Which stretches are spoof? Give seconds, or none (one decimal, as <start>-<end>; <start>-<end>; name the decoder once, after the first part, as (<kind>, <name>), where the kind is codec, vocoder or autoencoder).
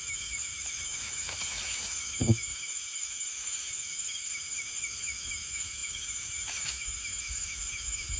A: 0.0-8.2 (autoencoder, DAC-VAE)